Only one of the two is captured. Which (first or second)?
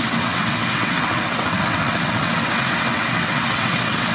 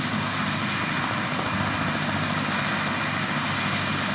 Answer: second